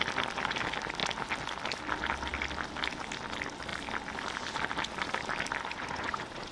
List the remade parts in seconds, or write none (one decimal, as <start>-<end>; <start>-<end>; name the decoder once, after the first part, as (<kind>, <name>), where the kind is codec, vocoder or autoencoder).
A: none